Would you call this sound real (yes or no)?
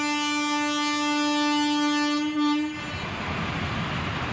yes